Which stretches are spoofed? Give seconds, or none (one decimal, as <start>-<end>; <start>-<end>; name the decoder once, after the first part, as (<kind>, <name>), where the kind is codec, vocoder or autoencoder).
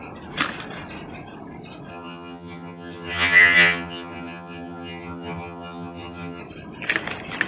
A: 1.9-6.4 (vocoder, HiFi-GAN)